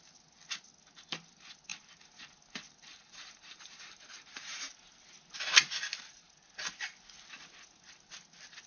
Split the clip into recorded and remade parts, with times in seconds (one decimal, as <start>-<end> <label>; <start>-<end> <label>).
0.0-1.7 recorded; 1.7-2.2 remade; 2.2-2.9 recorded; 2.9-4.7 remade; 4.7-8.7 recorded